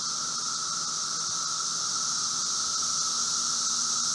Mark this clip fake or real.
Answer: real